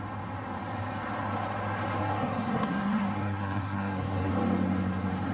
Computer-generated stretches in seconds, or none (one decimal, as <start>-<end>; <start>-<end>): 2.0-4.3